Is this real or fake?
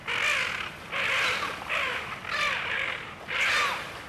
real